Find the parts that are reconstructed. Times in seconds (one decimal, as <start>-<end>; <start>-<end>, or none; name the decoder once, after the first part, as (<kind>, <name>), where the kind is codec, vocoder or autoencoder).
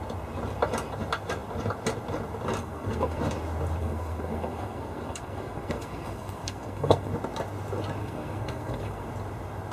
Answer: 2.6-3.2 (codec, SNAC); 3.8-7.1; 8.0-9.1